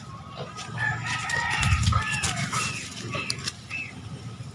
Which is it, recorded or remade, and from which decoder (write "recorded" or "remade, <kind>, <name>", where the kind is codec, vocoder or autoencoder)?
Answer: remade, vocoder, BigVGAN v2